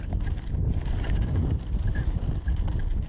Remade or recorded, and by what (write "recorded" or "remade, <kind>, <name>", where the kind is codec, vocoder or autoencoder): recorded